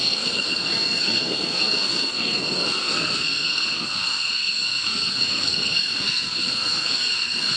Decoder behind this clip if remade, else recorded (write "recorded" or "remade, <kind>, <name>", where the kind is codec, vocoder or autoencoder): remade, codec, SNAC